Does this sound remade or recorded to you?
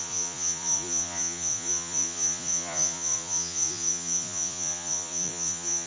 remade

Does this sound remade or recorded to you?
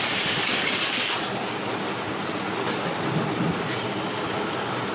recorded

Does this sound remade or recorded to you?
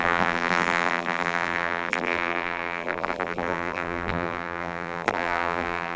remade